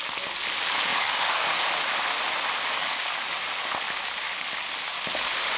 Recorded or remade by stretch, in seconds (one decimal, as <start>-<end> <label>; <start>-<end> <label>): 0.0-0.9 recorded; 0.9-1.6 remade; 1.6-2.8 recorded; 2.8-3.7 remade; 3.7-5.6 recorded